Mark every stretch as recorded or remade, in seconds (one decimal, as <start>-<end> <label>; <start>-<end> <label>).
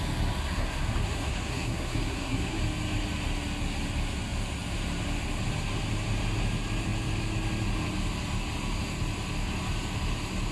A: 0.0-0.4 recorded; 0.4-2.6 remade; 2.6-10.5 recorded